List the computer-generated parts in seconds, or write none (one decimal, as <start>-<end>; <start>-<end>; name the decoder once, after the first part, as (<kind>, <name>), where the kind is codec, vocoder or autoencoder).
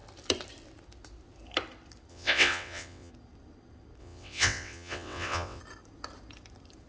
2.1-3.1 (vocoder, WaveNeXt); 4.0-5.6